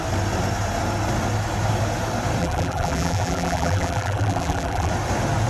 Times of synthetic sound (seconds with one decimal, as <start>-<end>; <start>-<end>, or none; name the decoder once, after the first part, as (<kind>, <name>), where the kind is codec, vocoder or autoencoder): 2.4-4.9 (vocoder, BigVGAN v2)

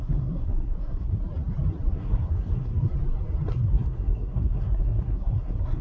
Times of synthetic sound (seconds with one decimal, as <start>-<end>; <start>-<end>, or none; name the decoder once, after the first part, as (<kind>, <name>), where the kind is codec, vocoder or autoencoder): 0.0-1.2 (codec, SNAC); 1.9-2.9; 3.5-5.8

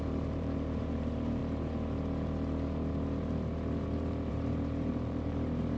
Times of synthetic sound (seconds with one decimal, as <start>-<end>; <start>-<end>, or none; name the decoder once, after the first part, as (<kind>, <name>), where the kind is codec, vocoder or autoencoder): 0.0-1.4 (vocoder, BigVGAN v2); 4.3-5.8

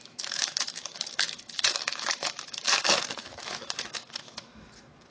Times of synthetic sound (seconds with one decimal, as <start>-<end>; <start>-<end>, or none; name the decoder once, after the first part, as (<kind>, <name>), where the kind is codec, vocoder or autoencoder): 0.0-5.1 (autoencoder, DAC-VAE)